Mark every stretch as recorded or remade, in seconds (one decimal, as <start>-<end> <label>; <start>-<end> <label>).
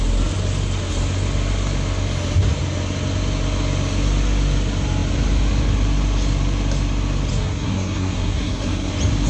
0.0-7.3 recorded; 7.3-8.9 remade; 8.9-9.3 recorded